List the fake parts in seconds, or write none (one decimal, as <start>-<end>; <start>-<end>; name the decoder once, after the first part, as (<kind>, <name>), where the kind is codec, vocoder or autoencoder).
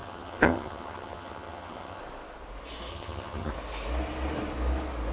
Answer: 0.0-2.0 (vocoder, HiFi-GAN); 2.9-3.5